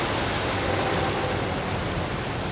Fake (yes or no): no